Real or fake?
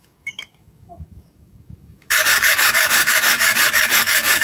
fake